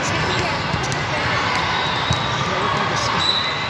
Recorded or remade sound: recorded